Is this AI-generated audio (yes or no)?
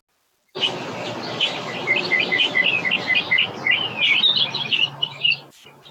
no